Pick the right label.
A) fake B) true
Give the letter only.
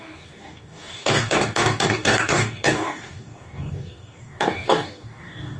A